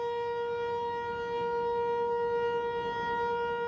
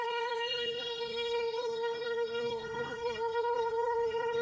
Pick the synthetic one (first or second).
second